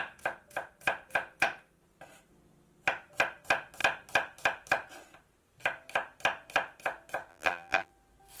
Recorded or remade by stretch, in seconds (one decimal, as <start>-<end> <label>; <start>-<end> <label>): 0.0-7.3 recorded; 7.3-7.9 remade; 7.9-8.4 recorded